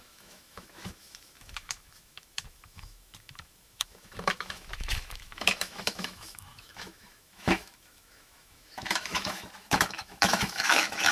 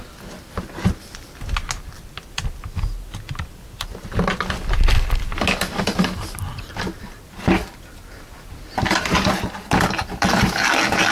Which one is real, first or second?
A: second